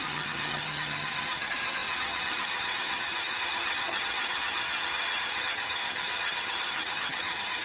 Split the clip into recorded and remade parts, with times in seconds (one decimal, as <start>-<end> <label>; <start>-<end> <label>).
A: 0.0-7.6 remade